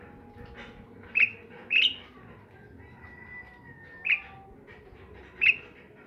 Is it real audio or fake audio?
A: real